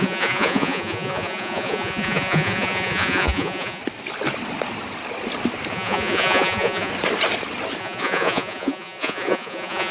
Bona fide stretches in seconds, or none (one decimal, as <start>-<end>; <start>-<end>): 3.8-5.7; 6.9-7.8